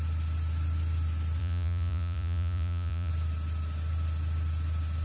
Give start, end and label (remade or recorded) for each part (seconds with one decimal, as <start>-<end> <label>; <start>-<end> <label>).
0.0-1.4 recorded; 1.4-3.1 remade; 3.1-5.0 recorded